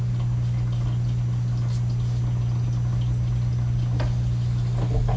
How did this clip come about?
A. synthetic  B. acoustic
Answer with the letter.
B